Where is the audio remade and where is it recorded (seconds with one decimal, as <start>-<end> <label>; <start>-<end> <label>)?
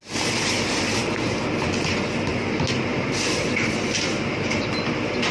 0.0-5.3 recorded